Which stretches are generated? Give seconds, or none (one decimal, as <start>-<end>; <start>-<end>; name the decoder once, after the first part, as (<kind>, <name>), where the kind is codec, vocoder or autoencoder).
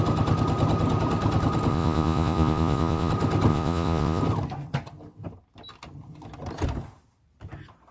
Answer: 1.7-3.1 (vocoder, Vocos); 3.5-4.2